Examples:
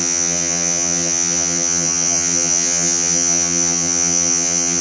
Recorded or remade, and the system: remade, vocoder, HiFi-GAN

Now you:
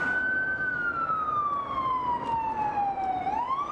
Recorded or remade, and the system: recorded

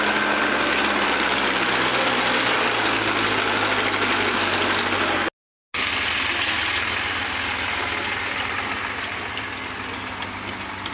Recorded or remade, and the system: recorded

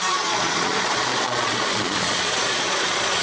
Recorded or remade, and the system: remade, vocoder, Vocos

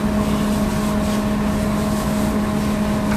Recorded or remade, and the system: recorded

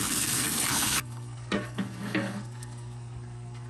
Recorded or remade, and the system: remade, codec, SNAC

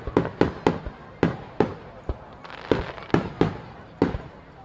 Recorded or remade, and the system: recorded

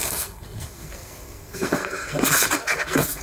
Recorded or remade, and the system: remade, codec, SNAC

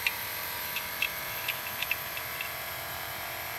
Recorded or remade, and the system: remade, vocoder, BigVGAN v2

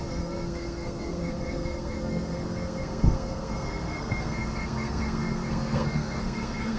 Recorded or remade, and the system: remade, codec, SNAC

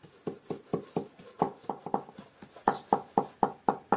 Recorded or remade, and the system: recorded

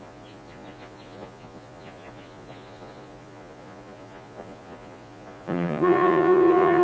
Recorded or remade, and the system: remade, vocoder, Vocos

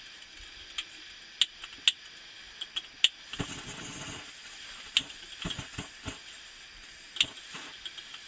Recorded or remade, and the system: recorded